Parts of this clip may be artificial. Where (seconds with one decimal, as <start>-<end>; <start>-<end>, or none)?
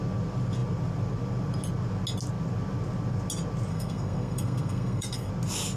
3.7-5.3